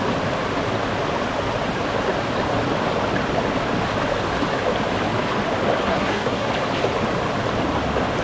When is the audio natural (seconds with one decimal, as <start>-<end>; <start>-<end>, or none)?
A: 0.0-5.8; 6.5-8.2